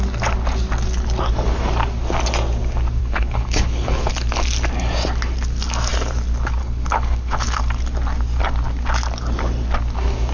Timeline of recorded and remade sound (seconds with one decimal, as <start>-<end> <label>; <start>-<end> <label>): 0.0-3.0 recorded; 3.0-4.1 remade; 4.1-6.6 recorded; 6.6-7.6 remade; 7.6-10.3 recorded